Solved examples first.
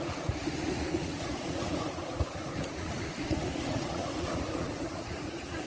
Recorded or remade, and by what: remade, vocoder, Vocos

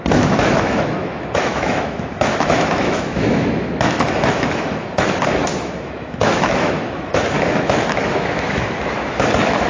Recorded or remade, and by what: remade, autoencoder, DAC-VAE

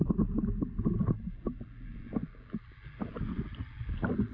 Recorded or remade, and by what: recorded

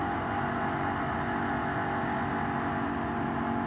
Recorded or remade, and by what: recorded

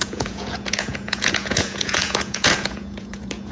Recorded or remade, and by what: remade, vocoder, Vocos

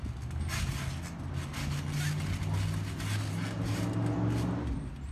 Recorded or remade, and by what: recorded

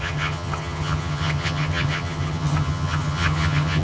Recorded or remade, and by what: remade, vocoder, HiFi-GAN